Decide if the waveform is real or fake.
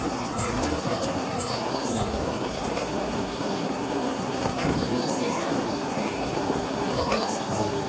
fake